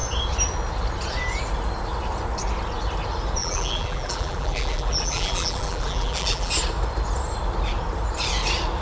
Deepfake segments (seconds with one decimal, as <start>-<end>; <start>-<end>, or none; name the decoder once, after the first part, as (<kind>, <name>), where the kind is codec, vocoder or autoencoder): 3.4-6.5 (vocoder, BigVGAN v2)